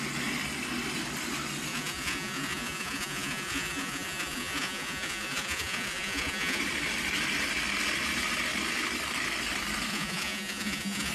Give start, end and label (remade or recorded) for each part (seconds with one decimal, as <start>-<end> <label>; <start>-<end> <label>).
0.0-1.7 recorded; 1.7-6.6 remade; 6.6-9.9 recorded; 9.9-11.1 remade